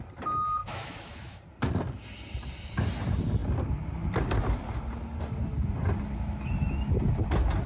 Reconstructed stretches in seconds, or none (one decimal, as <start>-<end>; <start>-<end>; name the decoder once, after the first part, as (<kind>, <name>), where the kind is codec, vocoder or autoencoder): 0.6-1.4 (autoencoder, DAC-VAE)